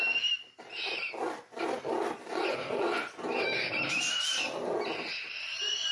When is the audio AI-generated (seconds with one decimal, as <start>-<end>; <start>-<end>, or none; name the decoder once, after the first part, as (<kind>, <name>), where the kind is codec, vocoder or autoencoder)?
2.3-3.0 (vocoder, Vocos)